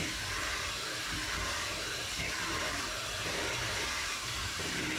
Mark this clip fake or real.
fake